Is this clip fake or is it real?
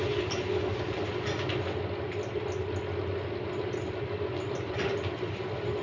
real